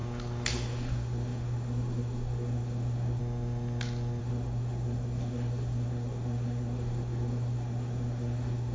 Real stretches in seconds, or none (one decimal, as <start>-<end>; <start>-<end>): 0.0-0.5; 3.2-4.2